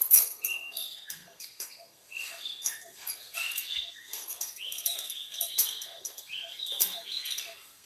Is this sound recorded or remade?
remade